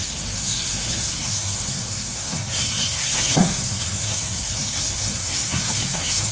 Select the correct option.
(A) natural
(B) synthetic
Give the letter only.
B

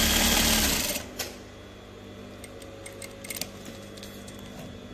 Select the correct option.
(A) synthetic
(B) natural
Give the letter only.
B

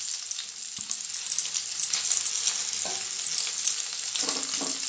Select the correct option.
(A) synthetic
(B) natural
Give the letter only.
B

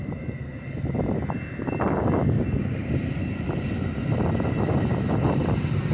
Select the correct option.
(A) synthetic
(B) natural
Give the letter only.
B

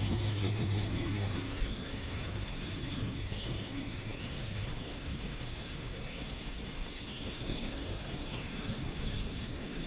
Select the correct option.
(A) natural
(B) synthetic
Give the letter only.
B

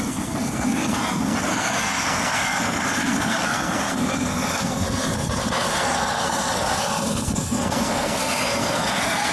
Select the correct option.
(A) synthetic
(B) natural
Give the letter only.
A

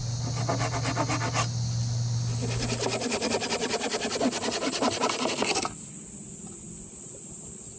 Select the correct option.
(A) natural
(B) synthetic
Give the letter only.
A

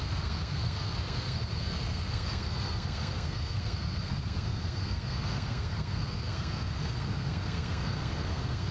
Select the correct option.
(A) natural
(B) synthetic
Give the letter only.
B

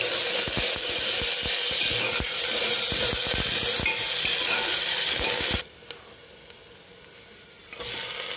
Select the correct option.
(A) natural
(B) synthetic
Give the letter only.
A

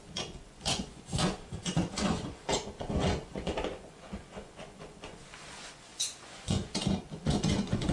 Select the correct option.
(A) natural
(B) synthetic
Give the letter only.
B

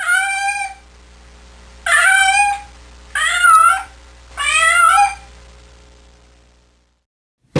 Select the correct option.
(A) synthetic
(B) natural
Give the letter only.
B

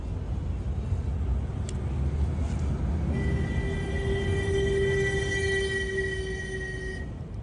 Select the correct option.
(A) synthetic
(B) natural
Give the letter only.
B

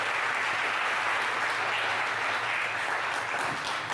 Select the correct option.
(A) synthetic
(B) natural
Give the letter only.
B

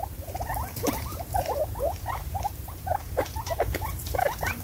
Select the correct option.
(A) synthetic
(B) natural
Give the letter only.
A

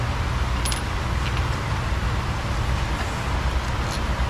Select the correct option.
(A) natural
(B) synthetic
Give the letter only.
A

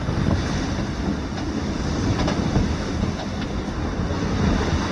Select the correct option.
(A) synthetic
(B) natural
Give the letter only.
B